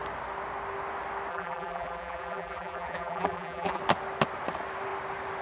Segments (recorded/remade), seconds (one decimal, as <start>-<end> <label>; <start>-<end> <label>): 0.0-1.3 recorded; 1.3-3.8 remade; 3.8-5.4 recorded